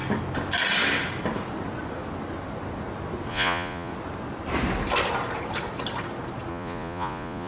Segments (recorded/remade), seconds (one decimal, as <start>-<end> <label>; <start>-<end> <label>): 0.0-3.3 recorded; 3.3-3.9 remade; 3.9-6.5 recorded; 6.5-7.5 remade